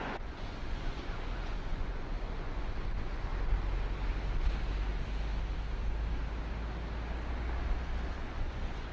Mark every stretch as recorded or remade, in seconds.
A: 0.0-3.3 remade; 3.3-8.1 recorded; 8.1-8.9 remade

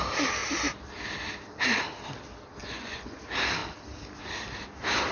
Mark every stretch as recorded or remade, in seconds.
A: 0.0-2.6 recorded; 2.6-3.2 remade; 3.2-5.1 recorded

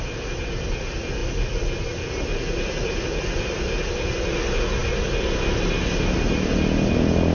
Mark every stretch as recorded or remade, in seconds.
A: 0.0-7.3 recorded